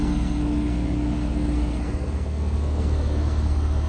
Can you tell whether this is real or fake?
fake